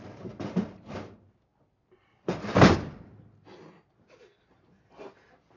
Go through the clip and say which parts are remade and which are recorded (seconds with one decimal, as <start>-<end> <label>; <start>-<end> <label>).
0.0-5.6 recorded